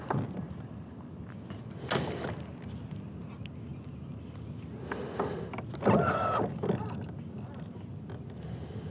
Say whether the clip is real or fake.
real